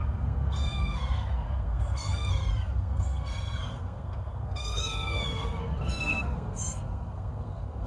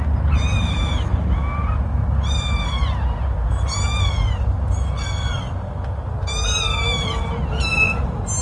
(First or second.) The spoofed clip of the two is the first